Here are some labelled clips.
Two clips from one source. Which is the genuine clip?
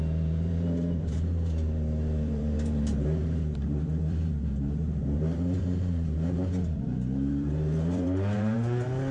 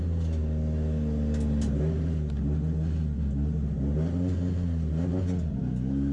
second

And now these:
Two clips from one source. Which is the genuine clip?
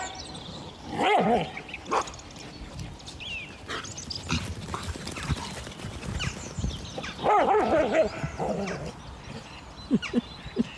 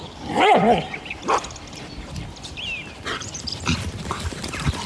first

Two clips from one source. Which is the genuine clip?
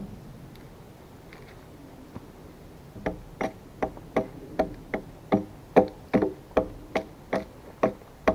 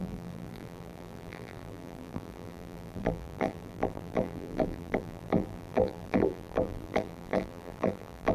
first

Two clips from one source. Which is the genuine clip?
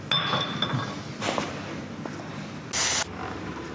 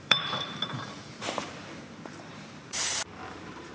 first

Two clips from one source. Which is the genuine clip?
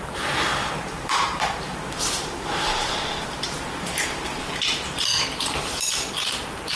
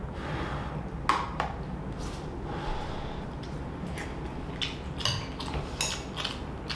second